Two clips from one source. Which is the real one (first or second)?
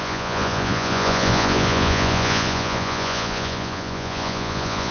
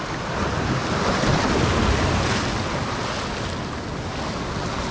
second